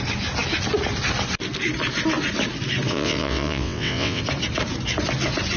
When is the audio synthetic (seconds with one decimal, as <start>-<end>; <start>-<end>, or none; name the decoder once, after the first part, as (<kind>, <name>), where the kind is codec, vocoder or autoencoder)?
2.9-4.2 (vocoder, WaveNeXt)